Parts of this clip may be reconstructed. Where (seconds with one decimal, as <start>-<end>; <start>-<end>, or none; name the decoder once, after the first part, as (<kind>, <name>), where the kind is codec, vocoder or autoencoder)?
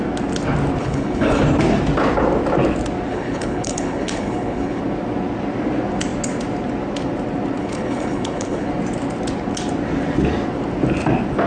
0.8-1.4 (codec, HILCodec); 3.1-4.8; 7.6-8.7